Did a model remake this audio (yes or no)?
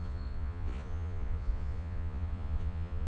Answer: yes